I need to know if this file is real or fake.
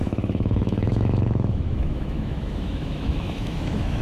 fake